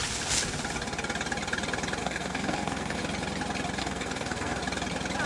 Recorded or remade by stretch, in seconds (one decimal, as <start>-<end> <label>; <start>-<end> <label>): 0.0-2.0 recorded; 2.0-3.0 remade; 3.0-3.8 recorded; 3.8-4.6 remade; 4.6-5.3 recorded